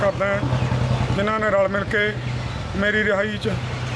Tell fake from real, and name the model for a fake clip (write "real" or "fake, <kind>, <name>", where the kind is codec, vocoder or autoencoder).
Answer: real